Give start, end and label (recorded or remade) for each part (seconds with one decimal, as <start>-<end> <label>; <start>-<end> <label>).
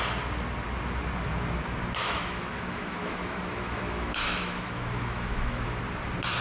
0.0-2.0 recorded; 2.0-5.8 remade; 5.8-6.4 recorded